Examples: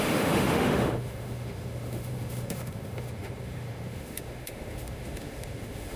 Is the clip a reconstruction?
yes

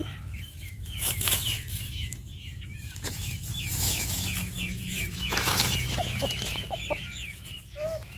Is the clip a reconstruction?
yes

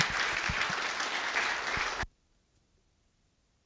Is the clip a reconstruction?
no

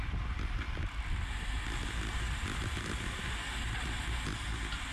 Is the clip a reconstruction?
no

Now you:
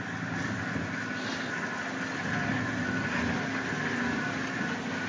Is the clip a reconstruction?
no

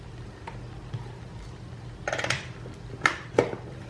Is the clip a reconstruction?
yes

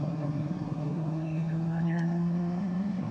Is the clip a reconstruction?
yes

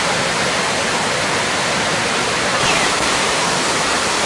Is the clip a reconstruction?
yes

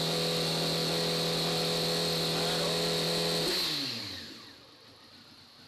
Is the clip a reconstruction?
no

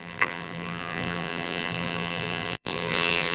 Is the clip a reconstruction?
yes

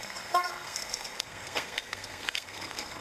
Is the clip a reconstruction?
yes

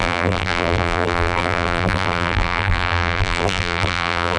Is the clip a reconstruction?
yes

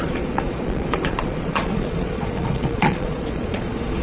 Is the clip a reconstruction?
yes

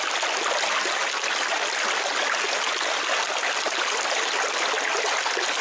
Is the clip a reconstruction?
no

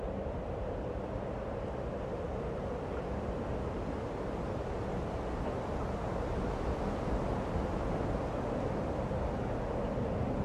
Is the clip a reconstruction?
no